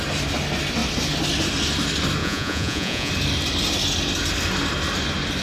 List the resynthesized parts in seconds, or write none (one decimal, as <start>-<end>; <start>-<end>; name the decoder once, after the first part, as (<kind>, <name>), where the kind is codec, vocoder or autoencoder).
2.2-3.1 (vocoder, Vocos)